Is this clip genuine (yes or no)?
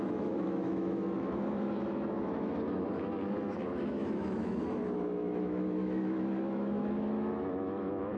no